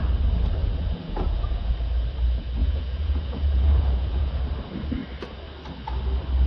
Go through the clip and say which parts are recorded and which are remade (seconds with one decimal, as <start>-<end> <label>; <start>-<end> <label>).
0.0-0.6 recorded; 0.6-1.7 remade; 1.7-2.6 recorded; 2.6-4.4 remade; 4.4-6.5 recorded